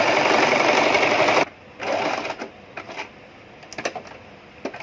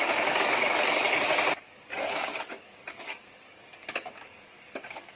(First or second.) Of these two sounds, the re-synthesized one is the second